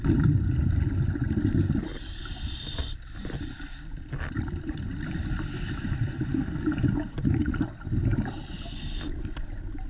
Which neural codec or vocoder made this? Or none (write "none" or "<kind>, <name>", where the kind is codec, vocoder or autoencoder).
none